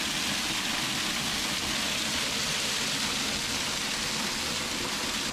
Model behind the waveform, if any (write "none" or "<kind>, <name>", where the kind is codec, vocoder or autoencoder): none